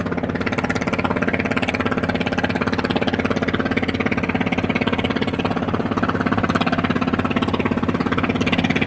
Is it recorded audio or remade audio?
recorded